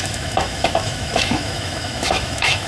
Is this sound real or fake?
fake